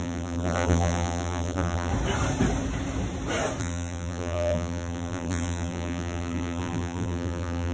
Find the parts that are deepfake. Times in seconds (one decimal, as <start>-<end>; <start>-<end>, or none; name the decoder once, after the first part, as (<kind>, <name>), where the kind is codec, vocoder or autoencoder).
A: 0.0-1.9 (vocoder, BigVGAN v2); 3.6-7.7